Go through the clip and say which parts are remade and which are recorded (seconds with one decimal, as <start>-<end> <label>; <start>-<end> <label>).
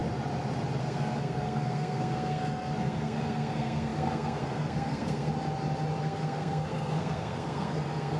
0.0-0.8 recorded; 0.8-5.3 remade; 5.3-6.0 recorded; 6.0-8.2 remade